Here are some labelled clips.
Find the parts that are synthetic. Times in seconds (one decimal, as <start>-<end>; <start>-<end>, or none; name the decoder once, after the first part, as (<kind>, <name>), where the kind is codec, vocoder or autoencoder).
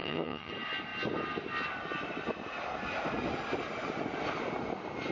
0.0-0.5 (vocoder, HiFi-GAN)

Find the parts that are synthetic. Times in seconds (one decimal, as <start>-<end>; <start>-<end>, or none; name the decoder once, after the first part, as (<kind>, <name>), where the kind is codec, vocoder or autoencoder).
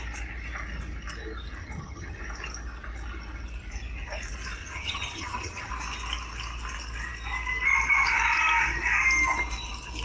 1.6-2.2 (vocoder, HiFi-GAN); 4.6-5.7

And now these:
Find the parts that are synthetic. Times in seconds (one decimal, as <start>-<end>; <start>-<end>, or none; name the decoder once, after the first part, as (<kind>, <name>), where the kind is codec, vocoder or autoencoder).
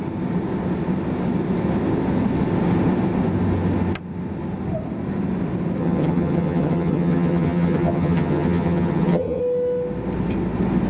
5.8-9.4 (vocoder, HiFi-GAN)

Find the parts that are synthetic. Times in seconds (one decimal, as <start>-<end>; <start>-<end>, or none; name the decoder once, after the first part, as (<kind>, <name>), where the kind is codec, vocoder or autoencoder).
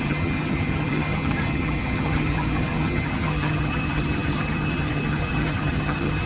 0.0-6.3 (vocoder, HiFi-GAN)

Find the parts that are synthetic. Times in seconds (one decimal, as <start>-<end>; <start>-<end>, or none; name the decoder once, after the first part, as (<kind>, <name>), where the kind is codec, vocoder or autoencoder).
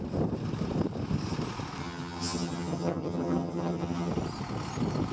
1.8-4.1 (vocoder, HiFi-GAN)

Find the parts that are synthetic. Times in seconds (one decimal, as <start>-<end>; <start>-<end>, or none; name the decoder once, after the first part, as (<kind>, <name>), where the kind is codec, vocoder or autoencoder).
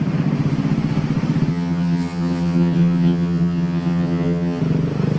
1.5-4.6 (vocoder, HiFi-GAN)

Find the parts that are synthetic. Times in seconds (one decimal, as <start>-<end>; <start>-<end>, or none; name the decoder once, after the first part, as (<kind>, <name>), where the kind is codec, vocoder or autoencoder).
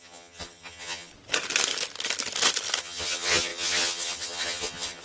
0.0-1.1 (vocoder, HiFi-GAN); 2.8-5.0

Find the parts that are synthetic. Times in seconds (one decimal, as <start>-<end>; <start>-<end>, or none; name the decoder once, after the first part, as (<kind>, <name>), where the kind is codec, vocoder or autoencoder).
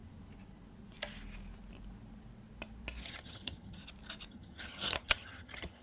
3.0-3.8 (vocoder, HiFi-GAN); 4.3-5.8